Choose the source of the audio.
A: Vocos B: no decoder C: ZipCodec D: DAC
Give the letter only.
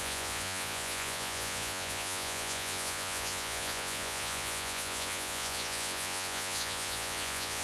A